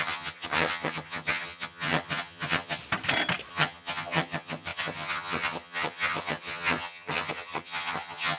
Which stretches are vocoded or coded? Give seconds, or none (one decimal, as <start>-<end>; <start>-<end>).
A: 0.0-2.8; 3.5-8.4